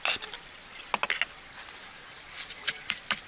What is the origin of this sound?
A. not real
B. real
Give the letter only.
B